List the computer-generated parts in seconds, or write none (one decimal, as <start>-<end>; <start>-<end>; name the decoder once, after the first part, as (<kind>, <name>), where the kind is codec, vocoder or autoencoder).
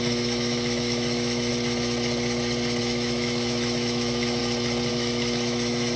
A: 0.0-1.5 (autoencoder, DAC-VAE); 2.8-4.4; 4.9-6.0